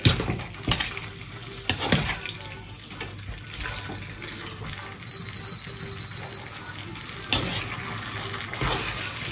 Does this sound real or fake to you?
real